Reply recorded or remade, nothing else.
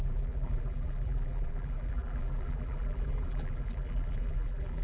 remade